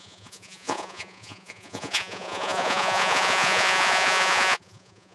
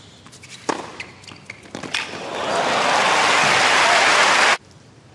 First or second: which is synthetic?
first